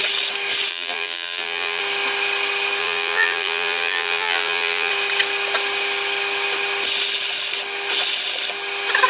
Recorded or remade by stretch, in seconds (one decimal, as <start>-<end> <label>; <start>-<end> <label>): 0.0-0.7 recorded; 0.7-1.8 remade; 1.8-2.8 recorded; 2.8-4.9 remade; 4.9-9.1 recorded